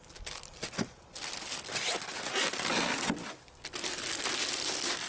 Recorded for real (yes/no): yes